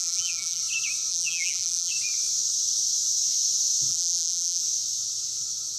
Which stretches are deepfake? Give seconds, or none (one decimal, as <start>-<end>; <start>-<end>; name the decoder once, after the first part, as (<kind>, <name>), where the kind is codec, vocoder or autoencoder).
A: 0.0-0.6 (vocoder, BigVGAN v2); 1.1-1.9; 3.9-4.6